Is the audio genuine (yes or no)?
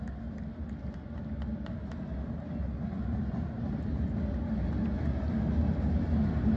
yes